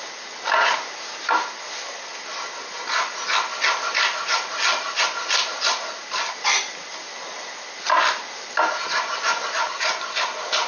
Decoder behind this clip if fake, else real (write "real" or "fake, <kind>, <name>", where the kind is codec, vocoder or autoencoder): real